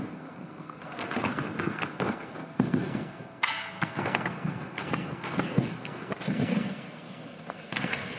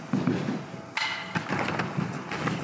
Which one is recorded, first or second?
second